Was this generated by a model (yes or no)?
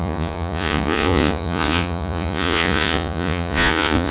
yes